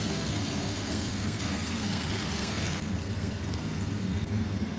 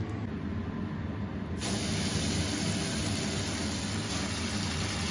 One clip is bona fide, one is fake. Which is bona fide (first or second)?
second